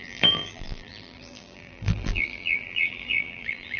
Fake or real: fake